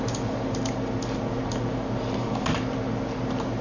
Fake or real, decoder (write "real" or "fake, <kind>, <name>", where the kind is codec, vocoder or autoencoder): real